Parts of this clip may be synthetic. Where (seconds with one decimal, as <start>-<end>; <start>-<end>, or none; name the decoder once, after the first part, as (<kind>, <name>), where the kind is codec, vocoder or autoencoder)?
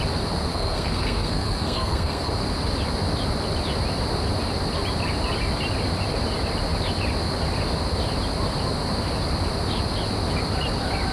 0.5-2.3 (codec, SNAC)